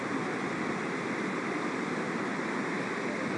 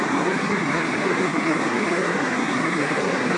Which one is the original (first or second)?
first